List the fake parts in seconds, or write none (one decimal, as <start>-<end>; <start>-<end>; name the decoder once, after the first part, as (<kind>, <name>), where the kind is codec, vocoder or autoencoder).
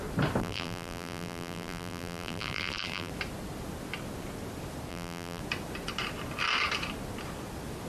0.4-3.1 (vocoder, BigVGAN v2); 4.9-5.4